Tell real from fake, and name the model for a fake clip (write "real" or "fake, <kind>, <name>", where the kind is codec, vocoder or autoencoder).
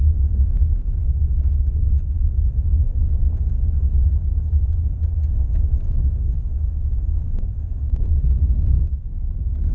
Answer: fake, codec, DAC